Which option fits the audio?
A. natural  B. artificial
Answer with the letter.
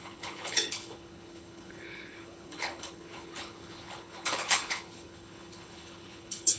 B